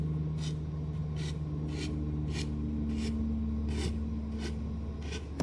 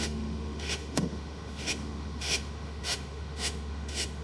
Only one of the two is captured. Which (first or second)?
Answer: first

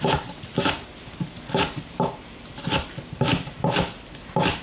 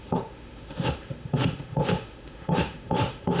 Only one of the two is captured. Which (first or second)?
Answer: first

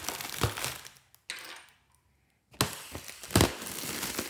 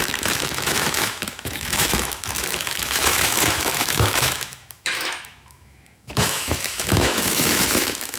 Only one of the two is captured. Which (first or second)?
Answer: first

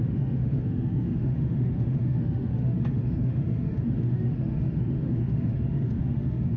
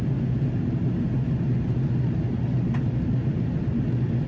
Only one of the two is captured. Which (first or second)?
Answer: second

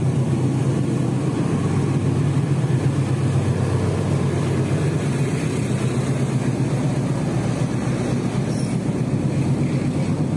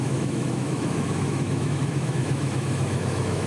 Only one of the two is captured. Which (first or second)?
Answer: first